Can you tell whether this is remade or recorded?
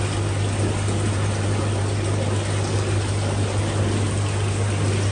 recorded